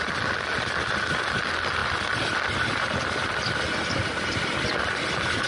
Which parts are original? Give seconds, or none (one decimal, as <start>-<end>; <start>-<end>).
0.0-5.5